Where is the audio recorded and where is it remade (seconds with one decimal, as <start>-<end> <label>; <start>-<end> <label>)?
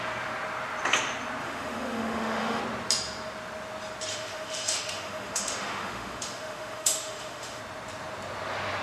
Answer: 0.0-1.4 recorded; 1.4-2.6 remade; 2.6-4.1 recorded; 4.1-7.6 remade; 7.6-8.8 recorded